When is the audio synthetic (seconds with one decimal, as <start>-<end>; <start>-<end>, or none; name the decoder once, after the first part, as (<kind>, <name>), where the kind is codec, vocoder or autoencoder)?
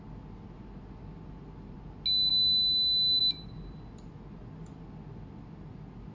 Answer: none